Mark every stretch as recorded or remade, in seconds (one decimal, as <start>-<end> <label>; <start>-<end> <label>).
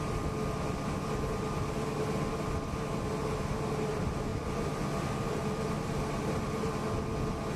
0.0-7.6 recorded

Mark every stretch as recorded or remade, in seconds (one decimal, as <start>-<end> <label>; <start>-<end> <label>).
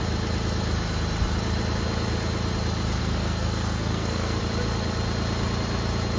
0.0-3.0 recorded; 3.0-4.4 remade; 4.4-6.2 recorded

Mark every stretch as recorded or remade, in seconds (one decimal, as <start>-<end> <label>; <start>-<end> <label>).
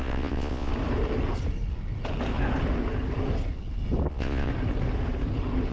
0.0-0.7 remade; 0.7-4.1 recorded; 4.1-4.5 remade; 4.5-5.7 recorded